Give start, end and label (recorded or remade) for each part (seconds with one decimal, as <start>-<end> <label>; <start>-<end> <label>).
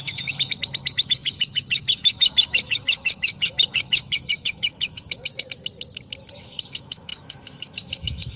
0.0-5.6 remade; 5.6-6.4 recorded; 6.4-8.4 remade